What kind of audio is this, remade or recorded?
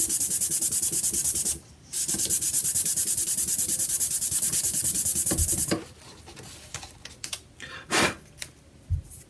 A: recorded